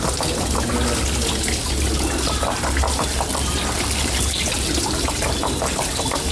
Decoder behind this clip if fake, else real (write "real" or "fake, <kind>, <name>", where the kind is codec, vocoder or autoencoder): fake, vocoder, BigVGAN v2